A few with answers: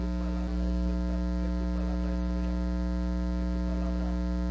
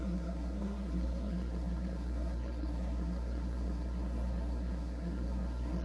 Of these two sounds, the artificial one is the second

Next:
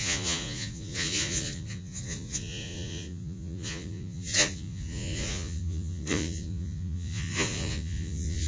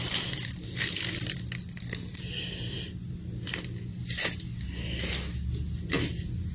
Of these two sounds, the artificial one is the first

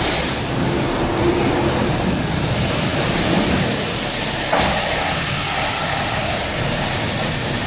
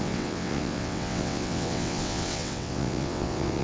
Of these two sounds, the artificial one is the second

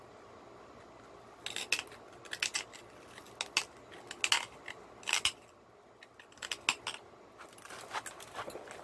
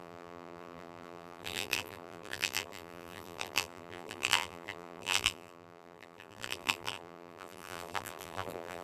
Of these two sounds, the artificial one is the second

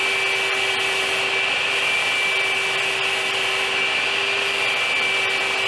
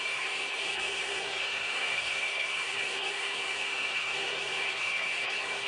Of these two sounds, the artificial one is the second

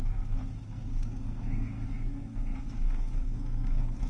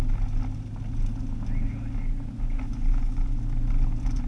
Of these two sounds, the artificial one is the first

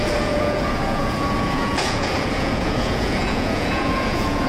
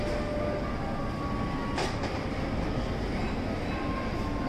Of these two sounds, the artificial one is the first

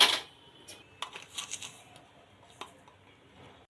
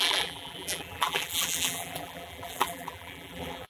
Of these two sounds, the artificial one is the second